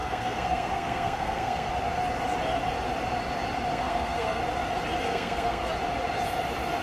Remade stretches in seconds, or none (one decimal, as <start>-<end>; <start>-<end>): 0.0-1.7; 3.7-4.4; 5.0-5.6